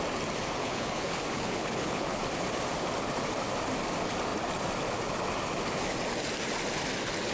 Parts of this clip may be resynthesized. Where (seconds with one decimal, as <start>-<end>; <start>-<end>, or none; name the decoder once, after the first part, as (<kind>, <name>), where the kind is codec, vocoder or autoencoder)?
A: 0.6-2.2 (codec, HILCodec)